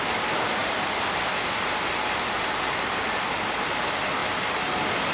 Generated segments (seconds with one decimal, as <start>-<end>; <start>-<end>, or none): 0.6-3.3; 4.2-5.1